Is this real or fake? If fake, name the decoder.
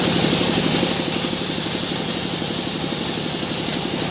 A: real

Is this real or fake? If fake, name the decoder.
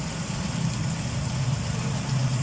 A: real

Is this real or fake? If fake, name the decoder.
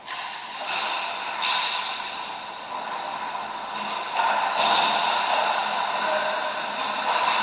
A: real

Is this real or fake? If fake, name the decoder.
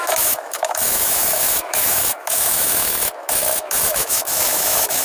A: fake, autoencoder, DAC-VAE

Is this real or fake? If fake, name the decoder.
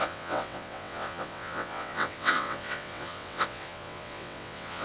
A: fake, vocoder, WaveNeXt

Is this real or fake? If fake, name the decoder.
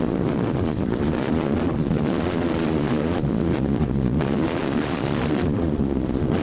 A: fake, vocoder, Vocos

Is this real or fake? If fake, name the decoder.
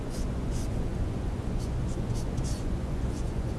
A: fake, vocoder, Vocos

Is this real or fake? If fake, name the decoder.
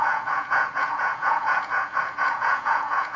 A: fake, vocoder, Vocos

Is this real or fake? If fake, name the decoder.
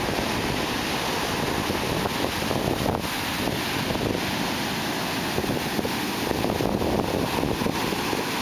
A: real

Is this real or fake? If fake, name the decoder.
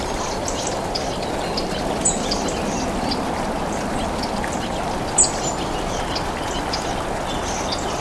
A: real